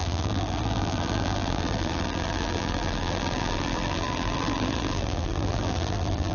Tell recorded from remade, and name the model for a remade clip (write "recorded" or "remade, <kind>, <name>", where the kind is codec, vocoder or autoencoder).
remade, vocoder, BigVGAN v2